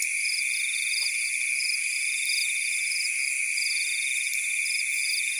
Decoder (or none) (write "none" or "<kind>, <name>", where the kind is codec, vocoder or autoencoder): none